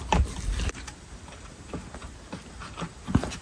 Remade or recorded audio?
recorded